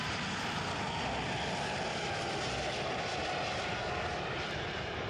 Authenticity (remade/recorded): recorded